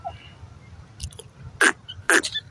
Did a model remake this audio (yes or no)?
no